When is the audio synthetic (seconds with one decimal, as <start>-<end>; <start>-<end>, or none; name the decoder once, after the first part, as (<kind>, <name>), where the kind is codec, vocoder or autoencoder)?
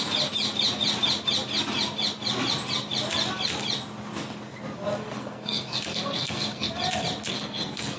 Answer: 5.0-6.7 (codec, SNAC); 7.3-8.0